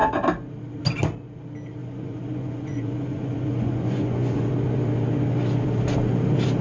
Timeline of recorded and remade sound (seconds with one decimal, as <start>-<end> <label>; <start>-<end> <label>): 0.0-1.8 recorded; 1.8-4.5 remade; 4.5-6.6 recorded